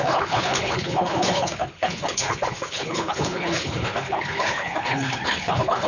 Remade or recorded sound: remade